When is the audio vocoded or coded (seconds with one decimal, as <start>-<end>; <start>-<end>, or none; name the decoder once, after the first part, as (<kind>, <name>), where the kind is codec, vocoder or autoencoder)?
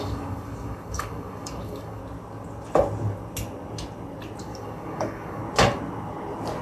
0.0-2.0 (codec, DAC); 4.4-5.4